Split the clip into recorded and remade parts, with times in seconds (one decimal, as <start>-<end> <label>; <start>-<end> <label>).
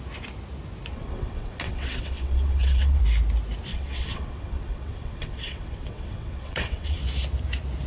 0.0-0.9 recorded; 0.9-3.0 remade; 3.0-3.7 recorded; 3.7-7.0 remade; 7.0-7.9 recorded